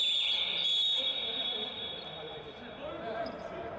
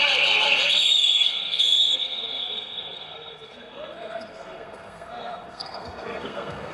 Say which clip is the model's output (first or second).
second